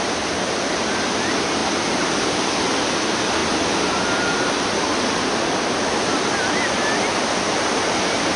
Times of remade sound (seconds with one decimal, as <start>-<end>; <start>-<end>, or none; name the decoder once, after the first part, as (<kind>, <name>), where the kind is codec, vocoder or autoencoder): none